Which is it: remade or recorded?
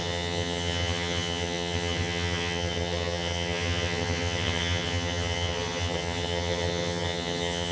remade